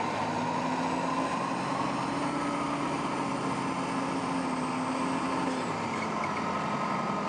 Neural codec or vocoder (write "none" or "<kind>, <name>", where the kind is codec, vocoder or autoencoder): none